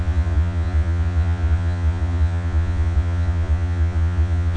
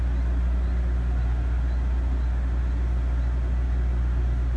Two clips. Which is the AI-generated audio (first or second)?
first